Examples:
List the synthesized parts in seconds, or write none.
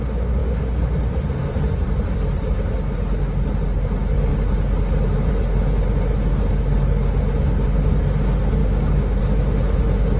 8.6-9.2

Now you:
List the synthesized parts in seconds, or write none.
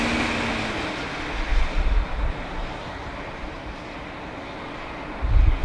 none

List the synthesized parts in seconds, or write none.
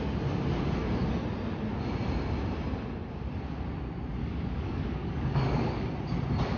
4.2-5.9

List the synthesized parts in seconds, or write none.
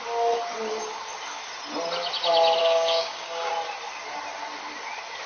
2.6-3.5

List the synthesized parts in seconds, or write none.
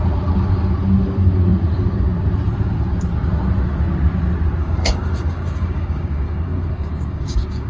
4.6-7.7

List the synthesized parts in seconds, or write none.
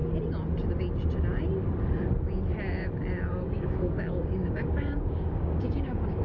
3.3-6.2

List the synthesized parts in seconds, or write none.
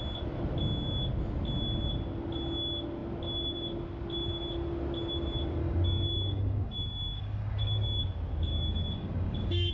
5.6-8.0; 8.5-9.7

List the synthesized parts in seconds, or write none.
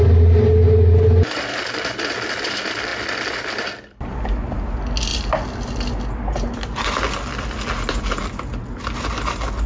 none